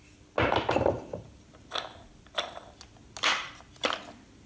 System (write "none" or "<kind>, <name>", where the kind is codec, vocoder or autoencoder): none